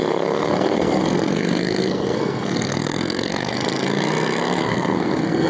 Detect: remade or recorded remade